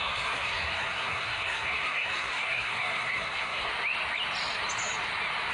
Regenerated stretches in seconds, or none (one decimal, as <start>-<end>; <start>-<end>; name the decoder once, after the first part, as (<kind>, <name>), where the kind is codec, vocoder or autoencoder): 0.0-3.7 (codec, SNAC)